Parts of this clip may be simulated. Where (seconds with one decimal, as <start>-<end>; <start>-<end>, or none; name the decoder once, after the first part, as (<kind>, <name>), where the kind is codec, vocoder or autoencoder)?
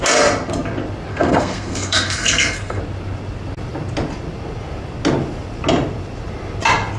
1.1-2.8 (codec, SNAC)